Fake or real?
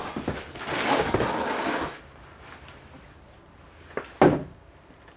real